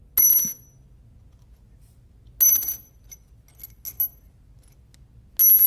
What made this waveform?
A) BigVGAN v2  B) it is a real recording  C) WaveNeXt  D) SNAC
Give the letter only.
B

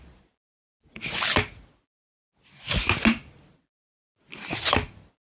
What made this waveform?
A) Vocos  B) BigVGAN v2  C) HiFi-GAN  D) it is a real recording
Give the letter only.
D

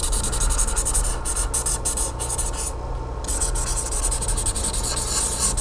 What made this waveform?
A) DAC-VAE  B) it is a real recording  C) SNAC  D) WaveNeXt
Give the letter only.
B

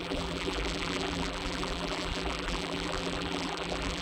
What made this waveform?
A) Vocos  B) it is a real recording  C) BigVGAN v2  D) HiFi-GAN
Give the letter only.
C